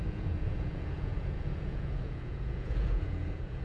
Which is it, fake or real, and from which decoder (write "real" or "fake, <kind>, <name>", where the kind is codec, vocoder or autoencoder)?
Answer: fake, vocoder, Vocos